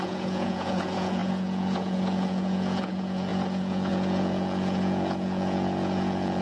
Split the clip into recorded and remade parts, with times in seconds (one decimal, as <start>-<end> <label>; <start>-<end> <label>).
0.0-6.4 remade